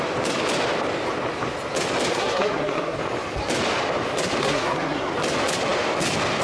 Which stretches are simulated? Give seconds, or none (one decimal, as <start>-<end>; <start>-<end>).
2.1-3.0; 4.4-5.1